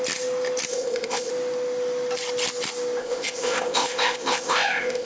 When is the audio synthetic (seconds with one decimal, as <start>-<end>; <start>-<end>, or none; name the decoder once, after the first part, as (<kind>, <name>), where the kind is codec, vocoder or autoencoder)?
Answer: 0.7-1.3 (codec, ZipCodec); 3.0-5.1